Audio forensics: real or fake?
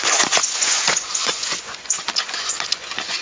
fake